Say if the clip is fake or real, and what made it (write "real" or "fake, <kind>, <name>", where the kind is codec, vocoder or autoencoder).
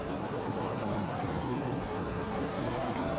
fake, codec, SNAC